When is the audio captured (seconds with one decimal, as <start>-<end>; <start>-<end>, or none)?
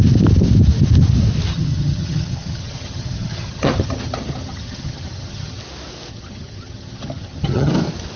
0.0-1.5; 5.6-6.1; 7.7-8.2